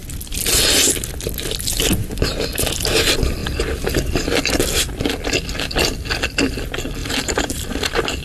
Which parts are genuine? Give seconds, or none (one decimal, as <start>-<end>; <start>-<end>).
0.0-7.0